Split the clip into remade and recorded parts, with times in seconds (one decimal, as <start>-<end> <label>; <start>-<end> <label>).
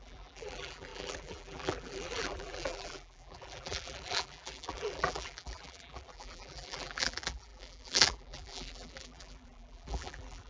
0.0-10.5 remade